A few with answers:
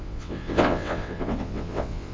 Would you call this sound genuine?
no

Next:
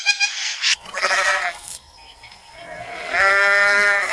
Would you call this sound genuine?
no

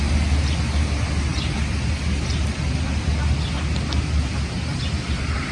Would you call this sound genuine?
yes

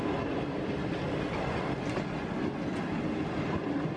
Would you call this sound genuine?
yes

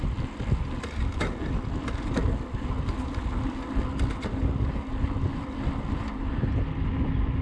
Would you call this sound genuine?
yes